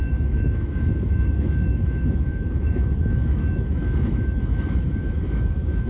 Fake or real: fake